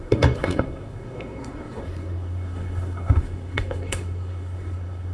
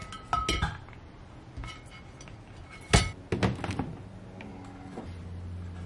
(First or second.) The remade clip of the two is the first